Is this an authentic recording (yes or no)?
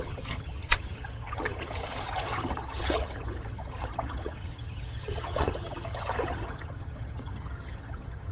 no